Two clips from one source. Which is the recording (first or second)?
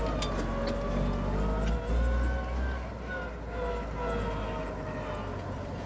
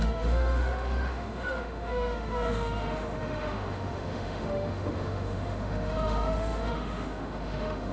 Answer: first